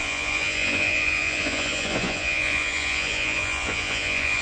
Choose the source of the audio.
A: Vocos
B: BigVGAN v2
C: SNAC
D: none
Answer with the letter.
A